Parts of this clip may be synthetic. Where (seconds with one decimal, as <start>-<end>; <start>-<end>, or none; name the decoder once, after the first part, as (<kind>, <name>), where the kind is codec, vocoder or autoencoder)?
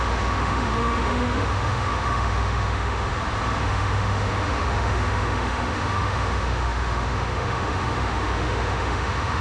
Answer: 0.0-3.1 (autoencoder, DAC-VAE); 3.6-9.4